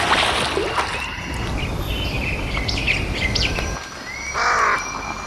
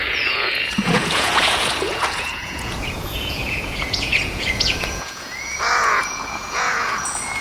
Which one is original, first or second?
first